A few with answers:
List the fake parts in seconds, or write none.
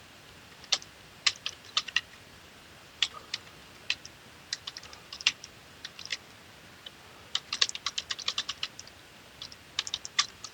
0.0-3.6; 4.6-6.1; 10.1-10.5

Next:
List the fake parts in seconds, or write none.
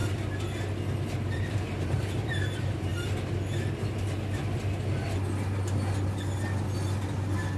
1.3-2.9